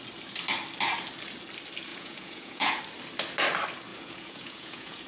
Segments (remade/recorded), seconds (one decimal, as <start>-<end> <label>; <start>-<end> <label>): 0.0-1.9 recorded; 1.9-2.8 remade; 2.8-3.9 recorded; 3.9-5.1 remade